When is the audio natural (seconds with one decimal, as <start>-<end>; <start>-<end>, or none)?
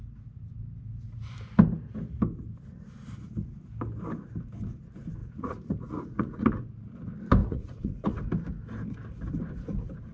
0.0-5.2; 6.5-7.4; 8.2-10.1